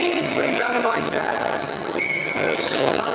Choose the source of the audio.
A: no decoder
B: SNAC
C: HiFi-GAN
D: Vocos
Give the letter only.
C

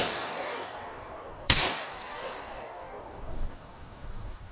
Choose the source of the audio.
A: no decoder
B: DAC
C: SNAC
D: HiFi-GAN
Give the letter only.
B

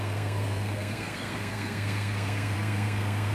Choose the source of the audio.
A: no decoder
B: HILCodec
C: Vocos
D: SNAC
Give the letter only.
D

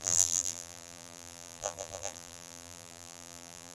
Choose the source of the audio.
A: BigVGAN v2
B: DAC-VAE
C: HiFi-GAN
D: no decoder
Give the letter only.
A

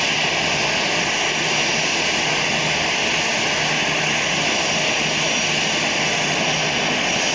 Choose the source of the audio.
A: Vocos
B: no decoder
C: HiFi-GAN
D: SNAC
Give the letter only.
B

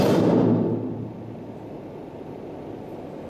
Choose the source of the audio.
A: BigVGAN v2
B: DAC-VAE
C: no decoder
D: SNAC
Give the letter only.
C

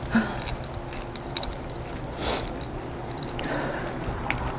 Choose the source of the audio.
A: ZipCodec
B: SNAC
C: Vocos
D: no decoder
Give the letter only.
D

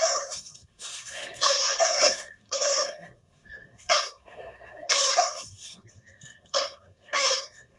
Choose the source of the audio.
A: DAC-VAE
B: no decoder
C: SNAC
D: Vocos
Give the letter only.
C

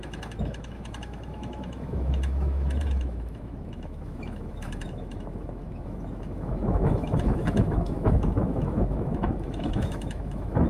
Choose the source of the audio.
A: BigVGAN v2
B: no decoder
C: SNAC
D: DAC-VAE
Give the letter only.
D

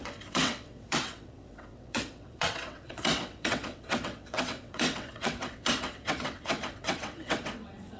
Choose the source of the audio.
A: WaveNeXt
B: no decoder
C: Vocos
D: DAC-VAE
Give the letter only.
A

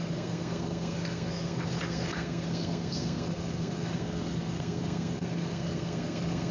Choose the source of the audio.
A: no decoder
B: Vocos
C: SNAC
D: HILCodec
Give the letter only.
C